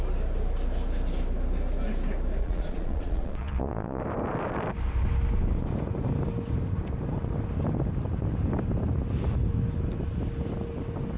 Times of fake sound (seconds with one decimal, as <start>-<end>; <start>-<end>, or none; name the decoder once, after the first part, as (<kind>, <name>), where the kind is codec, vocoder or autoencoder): 2.4-4.0 (vocoder, Vocos)

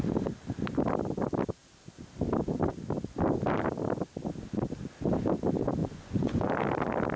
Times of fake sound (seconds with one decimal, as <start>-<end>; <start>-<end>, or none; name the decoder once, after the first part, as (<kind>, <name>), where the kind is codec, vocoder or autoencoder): 5.8-6.5 (vocoder, Vocos)